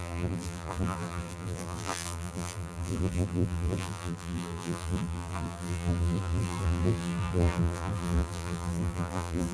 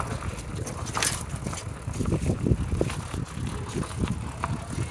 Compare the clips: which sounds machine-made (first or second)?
first